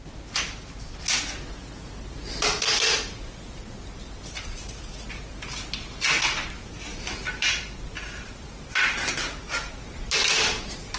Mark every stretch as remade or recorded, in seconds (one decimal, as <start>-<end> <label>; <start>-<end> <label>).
0.0-6.9 recorded; 6.9-7.9 remade; 7.9-11.0 recorded